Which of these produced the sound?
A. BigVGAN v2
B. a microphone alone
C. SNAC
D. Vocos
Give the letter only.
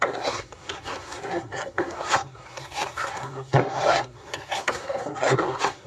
C